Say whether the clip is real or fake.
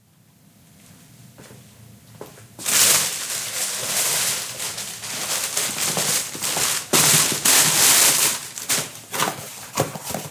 real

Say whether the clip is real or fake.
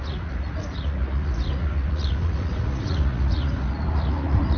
fake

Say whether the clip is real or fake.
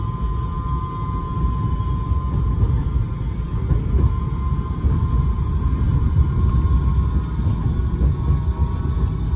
real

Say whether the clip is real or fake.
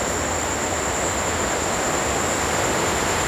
real